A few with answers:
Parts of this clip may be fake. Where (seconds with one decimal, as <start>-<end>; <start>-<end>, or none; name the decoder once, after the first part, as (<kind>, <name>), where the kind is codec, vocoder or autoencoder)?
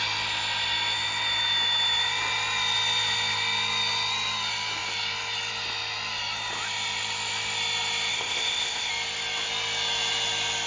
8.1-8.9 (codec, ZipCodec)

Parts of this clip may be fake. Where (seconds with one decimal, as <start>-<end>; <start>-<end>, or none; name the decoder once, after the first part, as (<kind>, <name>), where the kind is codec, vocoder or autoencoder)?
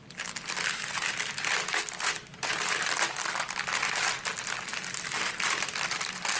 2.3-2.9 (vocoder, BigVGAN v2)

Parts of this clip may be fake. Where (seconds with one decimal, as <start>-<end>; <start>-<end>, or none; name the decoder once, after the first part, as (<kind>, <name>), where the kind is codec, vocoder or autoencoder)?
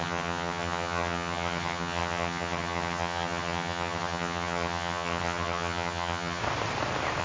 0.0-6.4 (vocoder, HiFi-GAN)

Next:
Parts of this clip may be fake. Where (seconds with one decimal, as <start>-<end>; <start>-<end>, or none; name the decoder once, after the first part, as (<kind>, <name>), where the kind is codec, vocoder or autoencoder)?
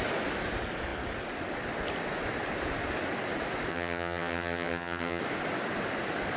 3.7-5.2 (vocoder, HiFi-GAN)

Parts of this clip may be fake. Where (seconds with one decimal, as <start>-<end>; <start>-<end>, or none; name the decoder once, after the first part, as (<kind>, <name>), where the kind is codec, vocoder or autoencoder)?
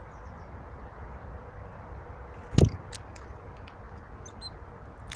none